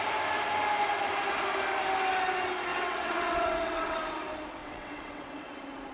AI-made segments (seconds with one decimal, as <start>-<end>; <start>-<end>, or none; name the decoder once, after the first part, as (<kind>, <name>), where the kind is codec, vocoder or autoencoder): 2.7-4.0 (vocoder, WaveNeXt); 4.6-5.5